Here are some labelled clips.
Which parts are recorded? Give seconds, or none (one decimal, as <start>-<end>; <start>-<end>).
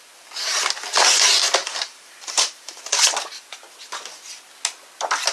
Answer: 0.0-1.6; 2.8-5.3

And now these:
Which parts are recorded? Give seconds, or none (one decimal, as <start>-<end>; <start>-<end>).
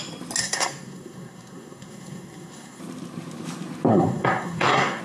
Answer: 0.0-0.4; 2.8-3.9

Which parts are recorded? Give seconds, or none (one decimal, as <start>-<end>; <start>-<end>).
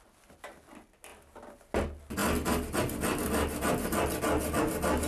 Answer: 0.0-5.1